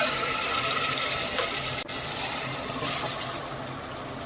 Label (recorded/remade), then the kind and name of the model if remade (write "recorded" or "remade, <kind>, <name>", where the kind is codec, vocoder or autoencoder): recorded